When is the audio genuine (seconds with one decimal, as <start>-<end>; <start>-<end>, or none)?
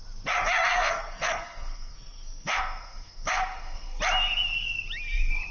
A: 0.0-0.7; 4.0-5.5